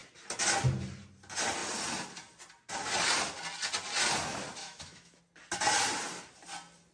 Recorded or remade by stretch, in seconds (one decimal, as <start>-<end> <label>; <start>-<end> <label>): 0.0-4.6 recorded; 4.6-5.2 remade; 5.2-6.9 recorded